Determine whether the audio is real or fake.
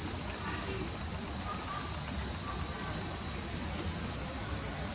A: real